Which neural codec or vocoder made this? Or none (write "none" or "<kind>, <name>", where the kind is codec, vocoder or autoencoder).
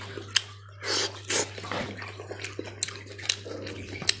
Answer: none